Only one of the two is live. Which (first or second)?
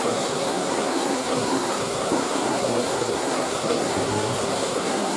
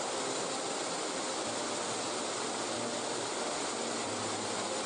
second